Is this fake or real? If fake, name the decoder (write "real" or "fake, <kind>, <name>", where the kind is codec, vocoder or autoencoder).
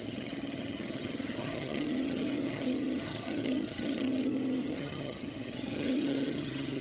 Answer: fake, vocoder, HiFi-GAN